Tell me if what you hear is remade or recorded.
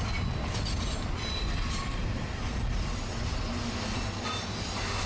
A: recorded